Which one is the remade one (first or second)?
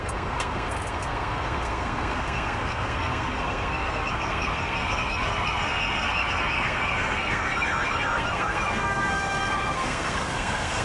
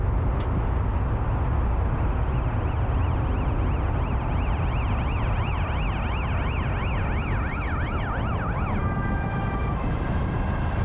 first